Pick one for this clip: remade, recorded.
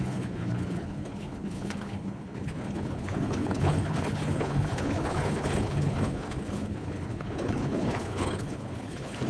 remade